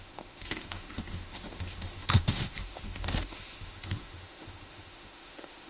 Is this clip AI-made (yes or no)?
yes